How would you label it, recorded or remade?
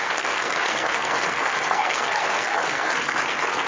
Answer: remade